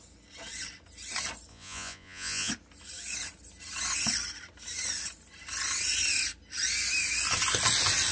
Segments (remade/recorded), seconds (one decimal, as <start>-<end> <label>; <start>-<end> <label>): 0.0-1.5 recorded; 1.5-2.5 remade; 2.5-8.1 recorded